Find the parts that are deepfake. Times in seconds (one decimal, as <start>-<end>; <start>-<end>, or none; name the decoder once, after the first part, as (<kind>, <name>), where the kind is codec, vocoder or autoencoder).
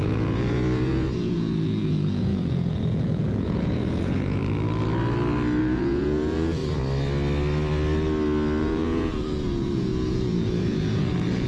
0.0-4.4 (vocoder, Vocos); 5.6-6.6; 8.6-11.5